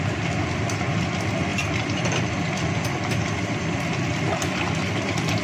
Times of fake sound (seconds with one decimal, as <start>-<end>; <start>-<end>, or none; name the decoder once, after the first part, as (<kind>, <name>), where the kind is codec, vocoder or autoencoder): 1.5-3.8 (vocoder, BigVGAN v2)